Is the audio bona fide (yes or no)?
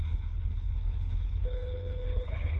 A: no